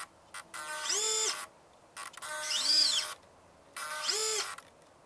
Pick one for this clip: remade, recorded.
recorded